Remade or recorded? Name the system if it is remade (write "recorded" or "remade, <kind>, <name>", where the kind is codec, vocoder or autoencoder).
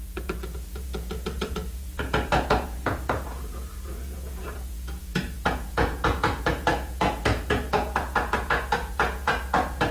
remade, vocoder, Vocos